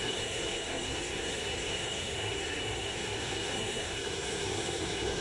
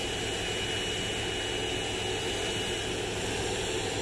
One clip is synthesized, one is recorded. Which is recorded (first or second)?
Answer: second